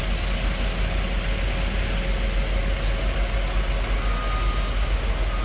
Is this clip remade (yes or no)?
no